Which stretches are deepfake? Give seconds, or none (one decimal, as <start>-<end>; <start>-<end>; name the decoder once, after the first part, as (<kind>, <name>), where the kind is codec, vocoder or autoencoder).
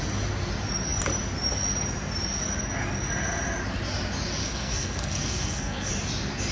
4.4-5.9 (codec, SNAC)